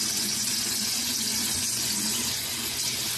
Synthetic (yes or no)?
yes